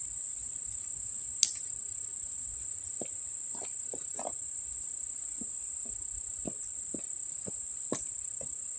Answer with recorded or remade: recorded